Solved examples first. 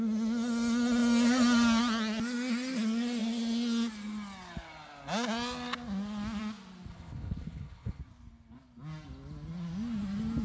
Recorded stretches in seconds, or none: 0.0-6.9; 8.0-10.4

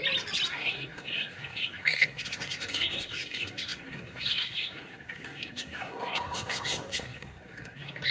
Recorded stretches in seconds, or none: 0.0-0.5

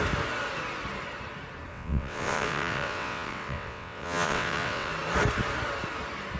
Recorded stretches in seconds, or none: 0.0-1.7; 4.9-6.4

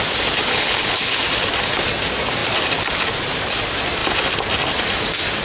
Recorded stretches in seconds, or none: 0.0-0.5; 1.2-5.4

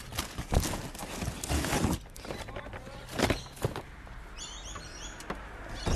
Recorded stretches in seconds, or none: 0.0-6.0